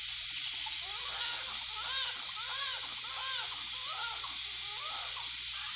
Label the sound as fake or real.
real